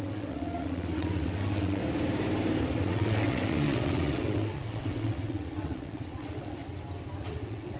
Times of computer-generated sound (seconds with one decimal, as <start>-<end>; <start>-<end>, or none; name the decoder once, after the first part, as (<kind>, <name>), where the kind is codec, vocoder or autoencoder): 0.0-1.8 (vocoder, WaveNeXt); 2.6-6.6; 7.2-7.8